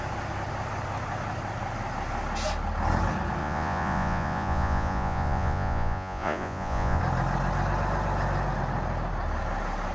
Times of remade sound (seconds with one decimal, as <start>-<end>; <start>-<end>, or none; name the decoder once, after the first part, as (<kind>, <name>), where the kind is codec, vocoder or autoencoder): 3.4-7.0 (vocoder, Vocos)